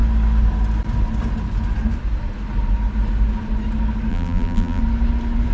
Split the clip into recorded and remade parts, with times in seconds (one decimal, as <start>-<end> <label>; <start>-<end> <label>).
0.0-4.1 recorded; 4.1-4.8 remade; 4.8-5.5 recorded